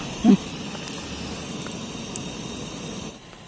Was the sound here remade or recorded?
recorded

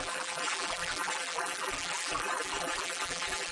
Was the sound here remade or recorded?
remade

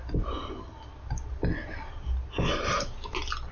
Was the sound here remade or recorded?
recorded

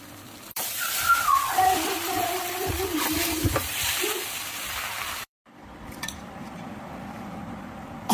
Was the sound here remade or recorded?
remade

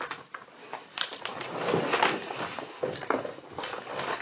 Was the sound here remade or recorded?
recorded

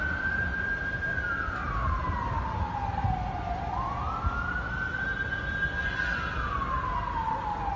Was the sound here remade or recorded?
recorded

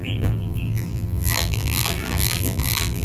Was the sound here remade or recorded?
remade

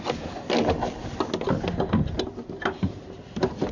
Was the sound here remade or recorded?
recorded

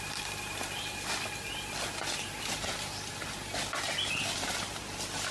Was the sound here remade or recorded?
recorded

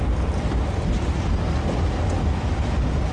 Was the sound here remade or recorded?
recorded